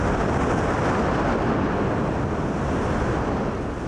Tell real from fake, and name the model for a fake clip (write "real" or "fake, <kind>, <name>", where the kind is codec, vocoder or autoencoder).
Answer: real